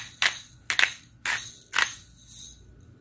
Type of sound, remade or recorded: recorded